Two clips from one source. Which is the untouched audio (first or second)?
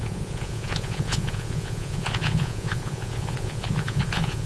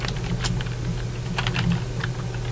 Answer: second